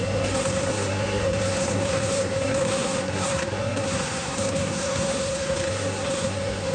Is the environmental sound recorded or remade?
remade